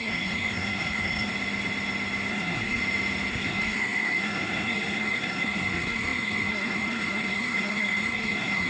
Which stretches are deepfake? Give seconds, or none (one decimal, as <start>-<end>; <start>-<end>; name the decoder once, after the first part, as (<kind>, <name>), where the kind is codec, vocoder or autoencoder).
0.0-1.3 (codec, SNAC); 2.3-2.8; 3.3-8.7